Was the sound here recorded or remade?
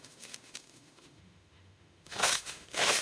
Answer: remade